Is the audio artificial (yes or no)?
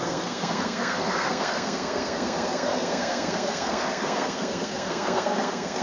yes